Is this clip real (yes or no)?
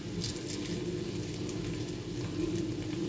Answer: yes